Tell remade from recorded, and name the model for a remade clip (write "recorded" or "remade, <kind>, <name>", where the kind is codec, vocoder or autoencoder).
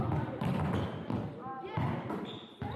recorded